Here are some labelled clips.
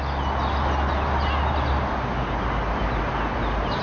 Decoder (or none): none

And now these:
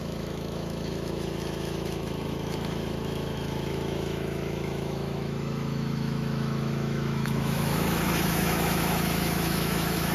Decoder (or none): autoencoder, DAC-VAE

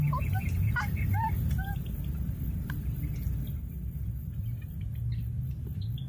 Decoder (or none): none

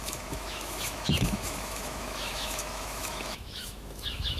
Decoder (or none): autoencoder, DAC-VAE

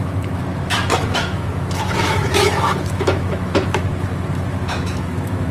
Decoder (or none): autoencoder, DAC-VAE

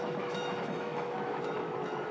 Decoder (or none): autoencoder, DAC-VAE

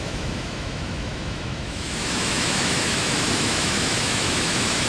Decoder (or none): autoencoder, DAC-VAE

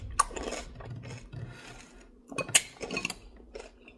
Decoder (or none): none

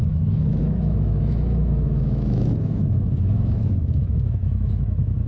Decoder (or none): autoencoder, DAC-VAE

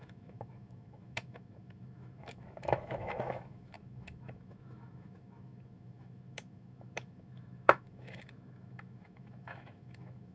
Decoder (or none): autoencoder, DAC-VAE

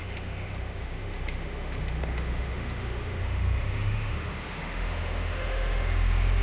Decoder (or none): autoencoder, DAC-VAE